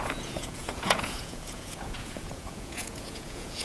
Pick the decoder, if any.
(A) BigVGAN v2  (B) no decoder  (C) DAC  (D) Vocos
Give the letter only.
D